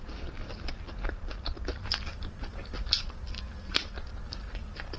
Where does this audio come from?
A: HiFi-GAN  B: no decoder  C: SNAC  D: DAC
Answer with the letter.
B